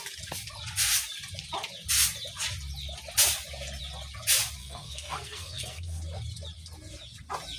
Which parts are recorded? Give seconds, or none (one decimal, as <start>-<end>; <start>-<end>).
0.0-4.6; 6.0-7.6